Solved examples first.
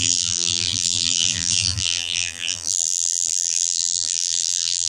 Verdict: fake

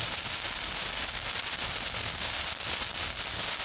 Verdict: real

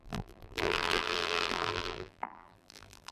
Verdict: fake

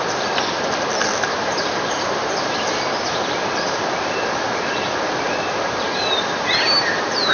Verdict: fake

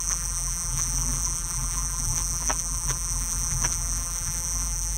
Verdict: fake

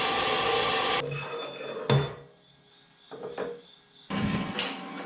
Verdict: real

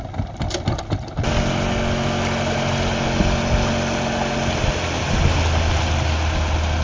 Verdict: real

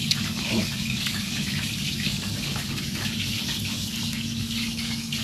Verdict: fake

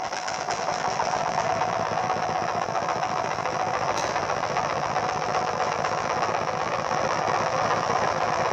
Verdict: fake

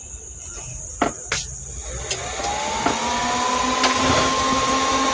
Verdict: real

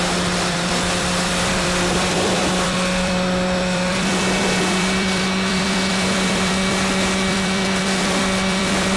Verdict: fake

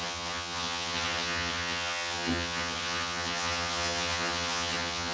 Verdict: fake